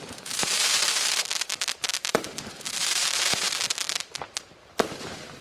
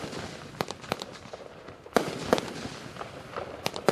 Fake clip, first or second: first